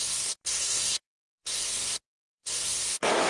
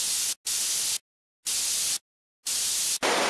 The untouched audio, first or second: second